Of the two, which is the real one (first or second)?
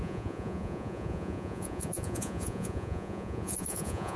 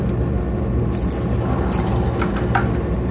second